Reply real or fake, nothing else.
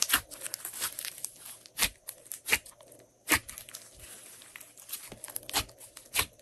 real